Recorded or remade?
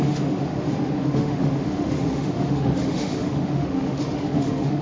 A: remade